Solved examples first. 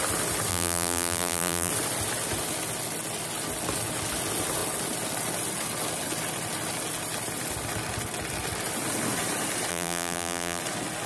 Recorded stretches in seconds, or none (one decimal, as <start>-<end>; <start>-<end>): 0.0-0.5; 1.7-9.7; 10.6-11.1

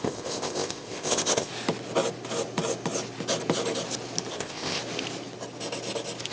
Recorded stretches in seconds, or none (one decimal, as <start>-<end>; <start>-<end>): 1.5-4.3; 4.8-6.3

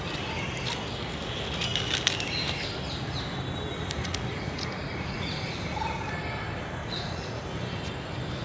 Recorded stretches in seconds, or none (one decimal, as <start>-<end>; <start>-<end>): 0.0-4.0; 5.4-6.8; 7.4-8.4

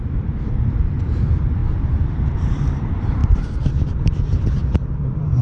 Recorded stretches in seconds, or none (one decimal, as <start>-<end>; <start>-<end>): none